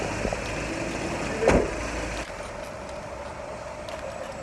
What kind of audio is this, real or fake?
real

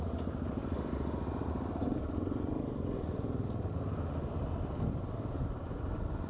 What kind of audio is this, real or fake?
real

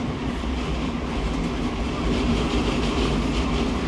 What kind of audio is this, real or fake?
real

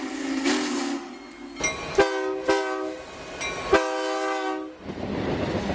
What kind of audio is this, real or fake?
real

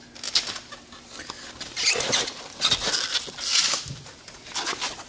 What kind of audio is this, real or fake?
real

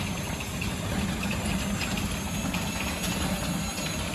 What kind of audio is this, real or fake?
real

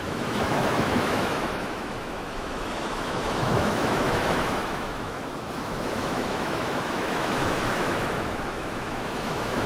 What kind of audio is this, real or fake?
fake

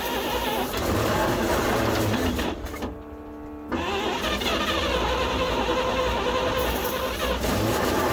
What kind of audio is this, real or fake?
real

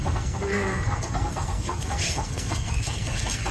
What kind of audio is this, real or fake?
fake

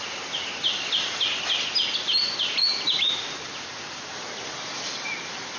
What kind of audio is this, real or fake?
real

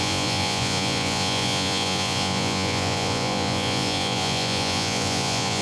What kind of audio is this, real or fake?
fake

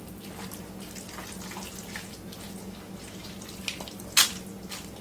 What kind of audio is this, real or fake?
real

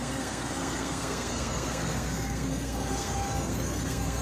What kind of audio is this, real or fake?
fake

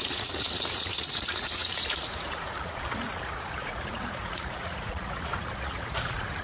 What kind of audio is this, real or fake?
fake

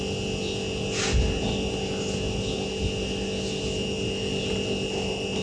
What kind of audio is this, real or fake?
real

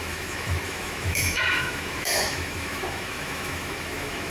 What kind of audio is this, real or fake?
fake